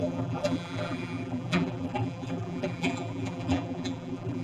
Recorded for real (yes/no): no